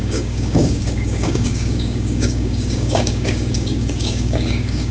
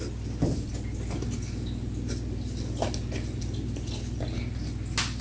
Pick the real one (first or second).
second